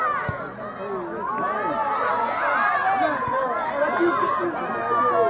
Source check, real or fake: real